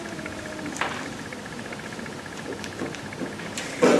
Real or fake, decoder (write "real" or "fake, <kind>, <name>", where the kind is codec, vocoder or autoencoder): real